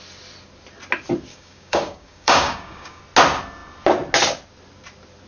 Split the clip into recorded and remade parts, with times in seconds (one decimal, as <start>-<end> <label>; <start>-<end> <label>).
0.0-1.3 recorded; 1.3-3.0 remade; 3.0-5.3 recorded